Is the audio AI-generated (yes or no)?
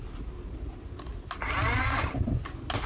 no